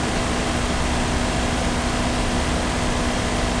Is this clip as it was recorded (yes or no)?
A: yes